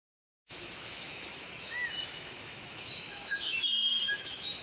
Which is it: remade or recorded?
remade